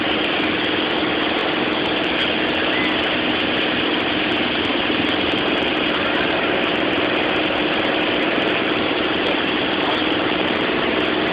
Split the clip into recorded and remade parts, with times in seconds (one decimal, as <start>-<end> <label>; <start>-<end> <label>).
0.0-4.7 recorded; 4.7-7.1 remade; 7.1-7.6 recorded; 7.6-10.6 remade; 10.6-11.3 recorded